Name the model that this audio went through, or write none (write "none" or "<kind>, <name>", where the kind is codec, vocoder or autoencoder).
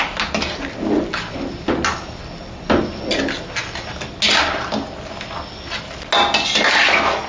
none